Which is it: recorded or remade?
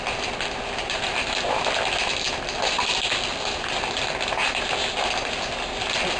recorded